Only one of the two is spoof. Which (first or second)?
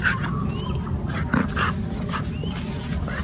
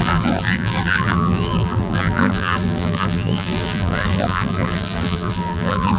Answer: second